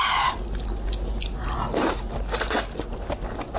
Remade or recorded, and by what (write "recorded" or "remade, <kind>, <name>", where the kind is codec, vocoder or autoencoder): recorded